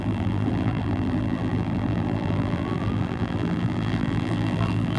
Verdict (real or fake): fake